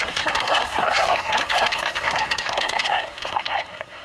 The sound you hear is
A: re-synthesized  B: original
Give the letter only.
A